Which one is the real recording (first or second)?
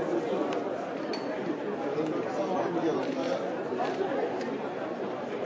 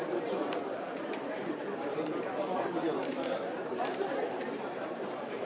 first